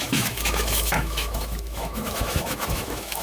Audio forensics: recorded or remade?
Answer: remade